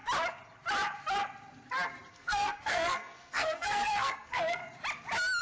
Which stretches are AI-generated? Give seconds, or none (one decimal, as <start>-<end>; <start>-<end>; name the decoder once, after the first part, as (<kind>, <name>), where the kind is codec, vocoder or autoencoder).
2.1-4.6 (codec, SNAC)